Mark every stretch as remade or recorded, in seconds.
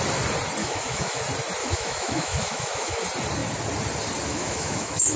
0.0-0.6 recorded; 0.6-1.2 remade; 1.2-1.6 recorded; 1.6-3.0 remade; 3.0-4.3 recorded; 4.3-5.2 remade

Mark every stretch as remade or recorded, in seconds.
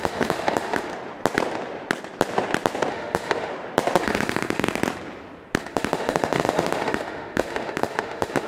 0.0-0.9 remade; 0.9-2.9 recorded; 2.9-3.5 remade; 3.5-4.0 recorded; 4.0-4.8 remade; 4.8-5.6 recorded; 5.6-8.5 remade